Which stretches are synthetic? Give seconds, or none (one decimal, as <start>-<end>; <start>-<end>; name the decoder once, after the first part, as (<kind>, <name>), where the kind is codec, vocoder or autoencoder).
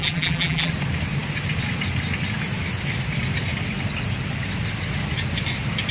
0.0-0.7 (vocoder, BigVGAN v2)